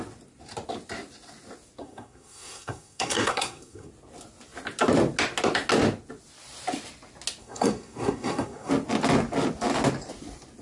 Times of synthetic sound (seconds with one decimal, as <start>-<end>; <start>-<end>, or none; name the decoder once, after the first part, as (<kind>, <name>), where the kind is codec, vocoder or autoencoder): 1.8-3.9 (codec, SNAC); 7.4-8.7